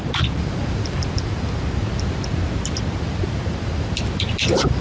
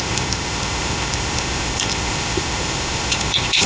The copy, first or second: second